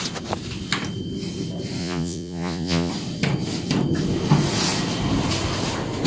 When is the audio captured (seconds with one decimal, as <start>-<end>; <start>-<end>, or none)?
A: 0.0-1.8; 2.9-6.1